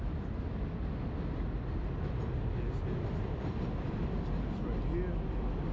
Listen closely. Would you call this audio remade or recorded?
recorded